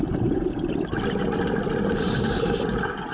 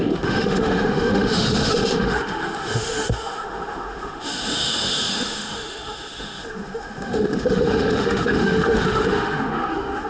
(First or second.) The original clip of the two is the first